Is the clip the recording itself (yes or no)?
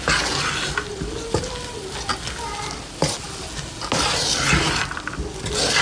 yes